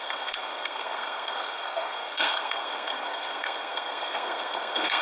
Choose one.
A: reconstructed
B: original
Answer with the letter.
A